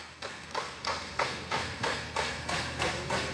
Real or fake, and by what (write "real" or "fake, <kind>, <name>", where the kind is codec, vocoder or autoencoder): fake, codec, SNAC